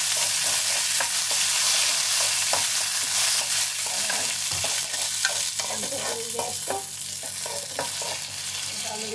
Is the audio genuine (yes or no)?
yes